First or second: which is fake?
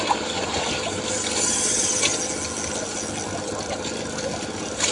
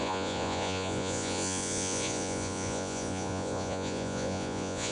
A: second